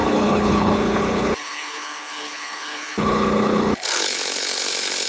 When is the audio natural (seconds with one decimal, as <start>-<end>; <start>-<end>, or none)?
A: none